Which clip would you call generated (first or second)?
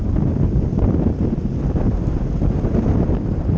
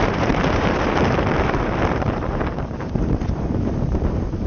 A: second